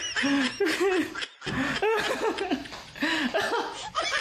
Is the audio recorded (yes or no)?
yes